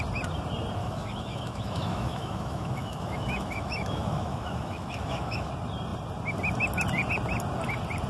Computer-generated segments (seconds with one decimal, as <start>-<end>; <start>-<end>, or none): 0.8-5.5